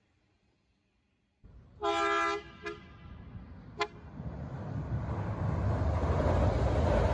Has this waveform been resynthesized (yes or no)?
no